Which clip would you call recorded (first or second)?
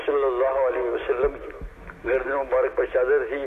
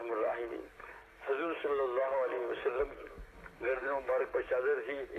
first